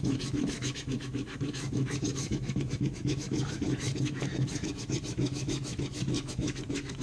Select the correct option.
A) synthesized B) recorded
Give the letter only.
A